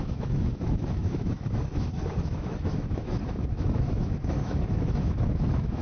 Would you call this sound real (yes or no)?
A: no